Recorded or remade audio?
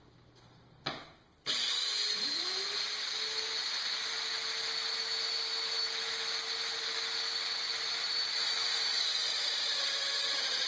recorded